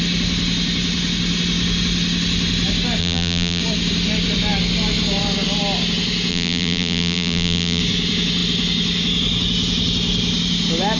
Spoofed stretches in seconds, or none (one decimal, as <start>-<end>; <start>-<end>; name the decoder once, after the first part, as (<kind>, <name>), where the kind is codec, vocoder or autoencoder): 3.0-3.6 (vocoder, BigVGAN v2); 6.3-7.8